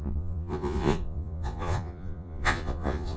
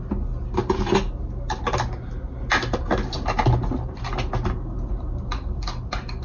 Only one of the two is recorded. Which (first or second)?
second